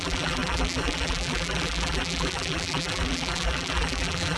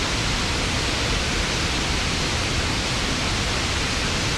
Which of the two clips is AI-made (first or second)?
first